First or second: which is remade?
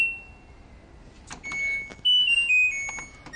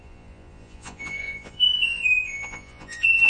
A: second